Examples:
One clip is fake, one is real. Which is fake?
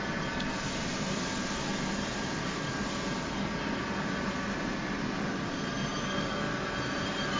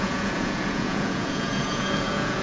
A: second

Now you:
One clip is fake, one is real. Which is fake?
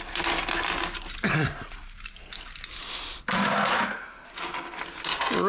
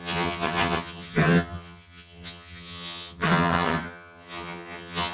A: second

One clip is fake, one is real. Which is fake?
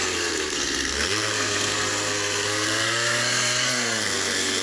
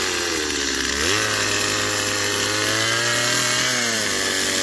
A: first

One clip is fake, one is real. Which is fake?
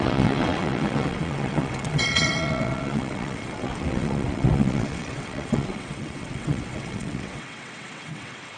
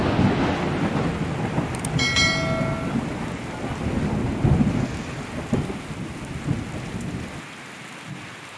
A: first